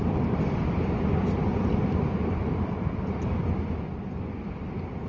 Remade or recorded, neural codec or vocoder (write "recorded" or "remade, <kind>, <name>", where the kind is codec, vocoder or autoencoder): remade, vocoder, BigVGAN v2